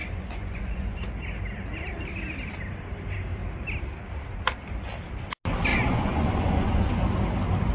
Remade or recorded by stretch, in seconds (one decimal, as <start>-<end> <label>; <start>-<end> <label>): 0.0-1.0 remade; 1.0-5.7 recorded; 5.7-6.9 remade; 6.9-7.7 recorded